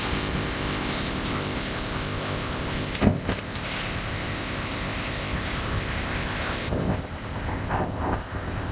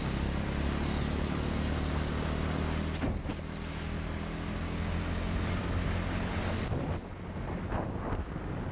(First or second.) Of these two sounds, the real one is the second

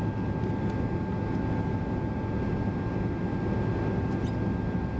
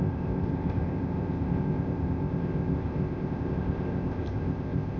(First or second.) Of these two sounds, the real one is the first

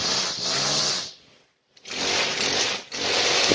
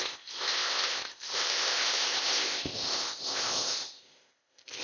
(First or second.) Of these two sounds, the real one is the first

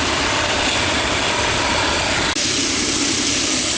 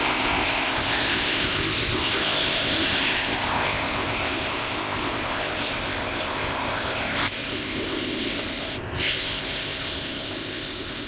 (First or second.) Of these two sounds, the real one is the first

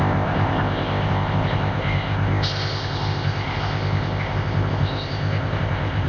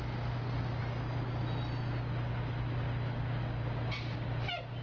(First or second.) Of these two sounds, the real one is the second